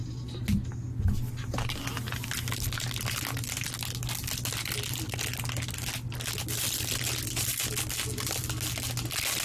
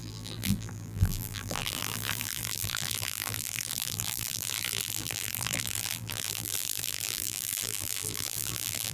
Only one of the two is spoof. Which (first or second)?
second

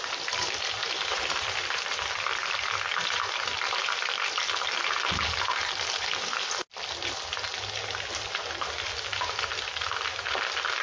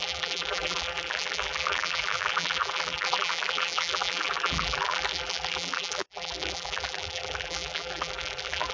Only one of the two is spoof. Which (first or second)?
second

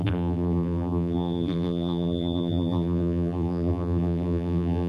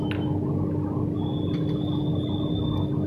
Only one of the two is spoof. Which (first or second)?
first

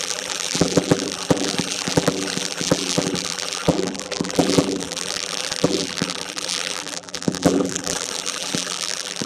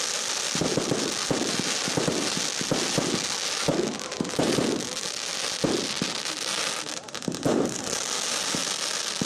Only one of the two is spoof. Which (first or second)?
first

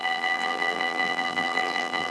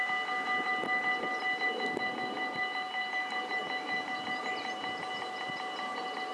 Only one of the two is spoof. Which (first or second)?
first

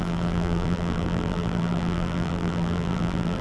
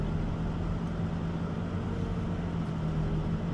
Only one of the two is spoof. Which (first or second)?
first